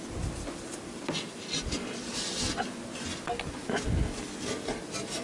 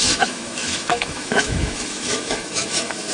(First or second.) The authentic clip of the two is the first